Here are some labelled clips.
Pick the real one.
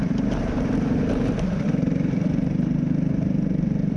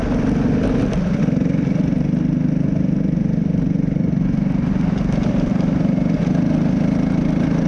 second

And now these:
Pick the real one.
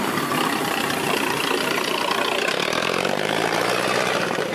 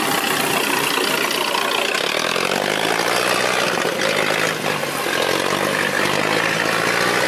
second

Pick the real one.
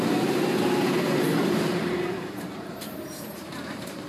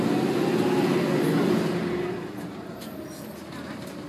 second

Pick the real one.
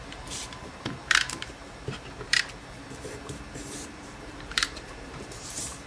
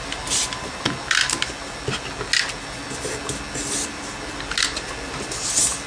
second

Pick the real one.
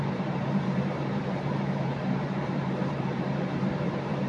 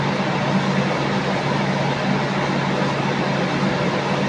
second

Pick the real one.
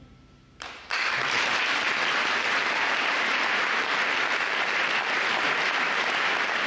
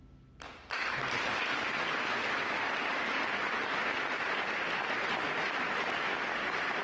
second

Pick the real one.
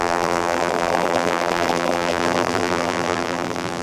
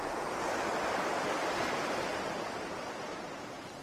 second